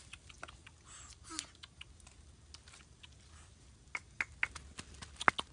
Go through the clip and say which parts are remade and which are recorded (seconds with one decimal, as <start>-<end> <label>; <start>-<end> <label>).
0.0-5.5 recorded